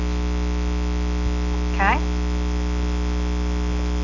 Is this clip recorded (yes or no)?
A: yes